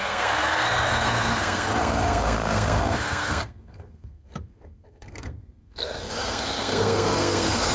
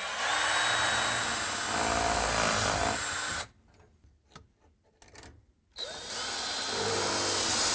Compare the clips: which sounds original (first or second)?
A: second